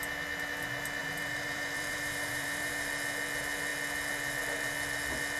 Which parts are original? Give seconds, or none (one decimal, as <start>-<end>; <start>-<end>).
0.0-1.0; 2.9-5.4